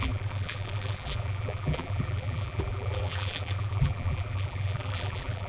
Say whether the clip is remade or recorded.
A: remade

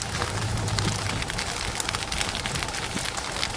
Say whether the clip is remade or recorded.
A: recorded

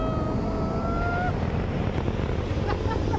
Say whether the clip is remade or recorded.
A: recorded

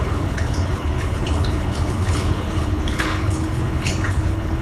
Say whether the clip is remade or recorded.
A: remade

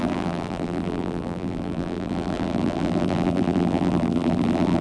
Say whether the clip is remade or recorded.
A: remade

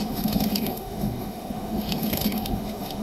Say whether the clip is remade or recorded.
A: remade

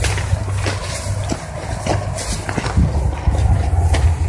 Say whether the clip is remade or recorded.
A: recorded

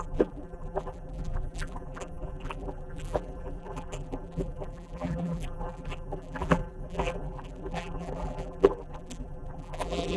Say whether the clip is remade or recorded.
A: remade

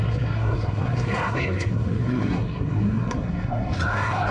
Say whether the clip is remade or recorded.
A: remade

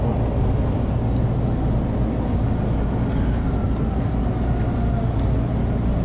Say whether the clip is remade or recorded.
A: recorded